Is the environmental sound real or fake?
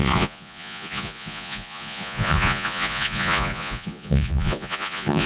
fake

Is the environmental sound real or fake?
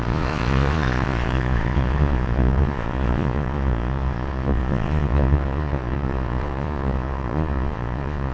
fake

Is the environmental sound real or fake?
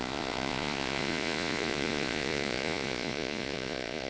fake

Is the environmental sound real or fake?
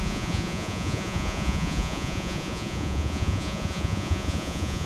fake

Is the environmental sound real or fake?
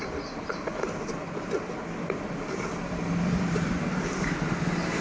real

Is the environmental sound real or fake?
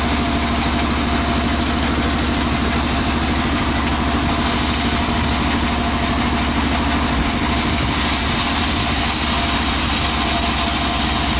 real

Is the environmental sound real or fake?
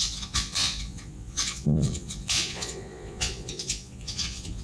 fake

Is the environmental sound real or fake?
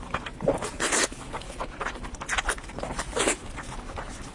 real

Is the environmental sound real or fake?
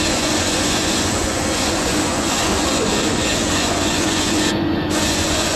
fake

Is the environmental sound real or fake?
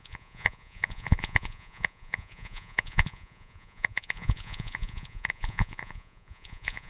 fake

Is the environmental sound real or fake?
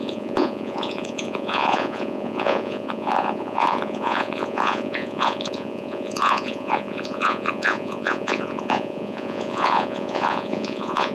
fake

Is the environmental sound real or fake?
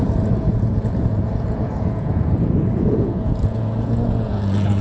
fake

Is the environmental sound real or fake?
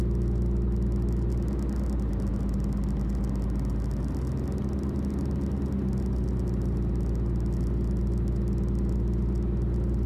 real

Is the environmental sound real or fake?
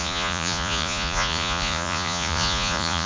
fake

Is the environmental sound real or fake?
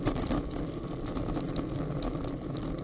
real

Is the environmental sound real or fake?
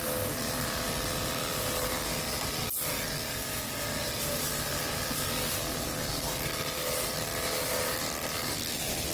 real